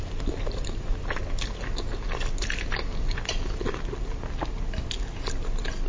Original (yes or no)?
yes